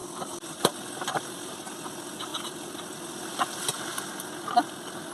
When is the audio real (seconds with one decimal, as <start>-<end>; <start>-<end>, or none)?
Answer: 1.6-2.3; 2.8-5.1